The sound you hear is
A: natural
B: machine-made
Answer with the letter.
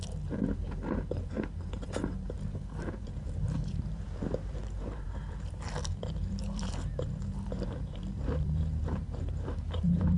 B